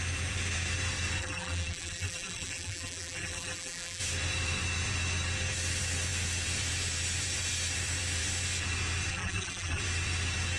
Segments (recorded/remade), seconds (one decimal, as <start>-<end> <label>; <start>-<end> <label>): 0.0-1.2 recorded; 1.2-4.0 remade; 4.0-9.1 recorded; 9.1-9.8 remade; 9.8-10.6 recorded